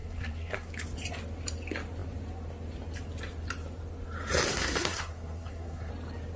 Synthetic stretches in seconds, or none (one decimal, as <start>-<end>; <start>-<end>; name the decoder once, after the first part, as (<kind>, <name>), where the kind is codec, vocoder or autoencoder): 0.0-0.7 (codec, SNAC); 4.5-5.9